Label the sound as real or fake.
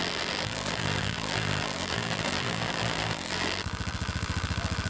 fake